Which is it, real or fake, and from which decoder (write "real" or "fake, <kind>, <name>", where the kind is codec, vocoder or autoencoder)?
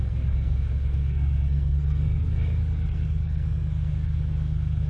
fake, codec, SNAC